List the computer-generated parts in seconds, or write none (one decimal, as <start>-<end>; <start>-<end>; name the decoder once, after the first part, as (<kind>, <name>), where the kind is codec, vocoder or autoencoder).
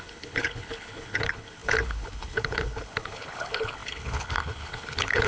0.0-5.3 (codec, HILCodec)